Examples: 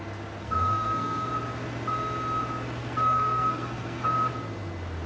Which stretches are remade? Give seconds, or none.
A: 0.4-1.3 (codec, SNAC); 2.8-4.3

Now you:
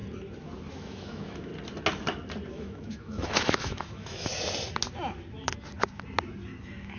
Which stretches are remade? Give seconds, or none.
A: 0.7-1.5 (autoencoder, DAC-VAE); 2.5-4.3; 6.6-7.0

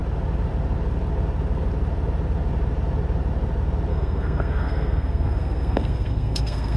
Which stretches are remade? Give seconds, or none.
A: 3.9-6.8 (codec, SNAC)

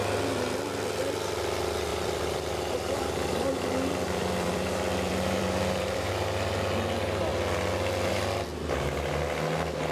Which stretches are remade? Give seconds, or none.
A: 1.9-6.1 (vocoder, BigVGAN v2)

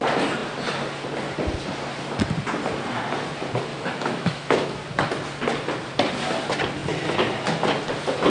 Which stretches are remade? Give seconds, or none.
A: 3.7-4.8 (autoencoder, DAC-VAE)

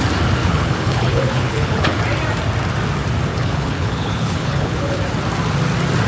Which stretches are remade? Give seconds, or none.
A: 0.4-2.0 (codec, HILCodec); 3.3-5.0